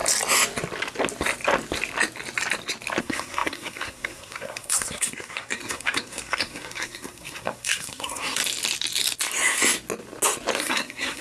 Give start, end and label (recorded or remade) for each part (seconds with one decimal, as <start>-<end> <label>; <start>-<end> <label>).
0.0-3.0 recorded; 3.0-8.4 remade; 8.4-10.6 recorded; 10.6-11.2 remade